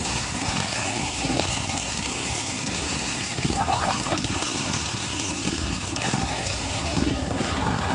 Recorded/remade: remade